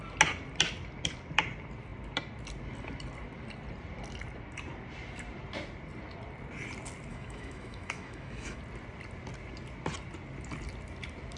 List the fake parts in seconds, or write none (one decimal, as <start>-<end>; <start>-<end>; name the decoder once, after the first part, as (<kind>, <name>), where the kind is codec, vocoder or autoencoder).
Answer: 7.1-8.6 (autoencoder, DAC-VAE)